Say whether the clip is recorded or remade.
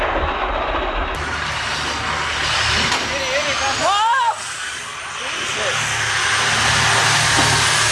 recorded